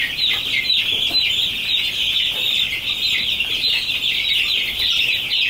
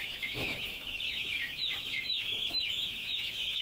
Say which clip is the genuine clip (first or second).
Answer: first